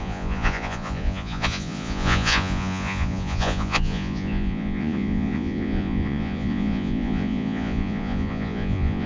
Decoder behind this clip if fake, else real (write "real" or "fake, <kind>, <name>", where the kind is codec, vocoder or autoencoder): fake, vocoder, Vocos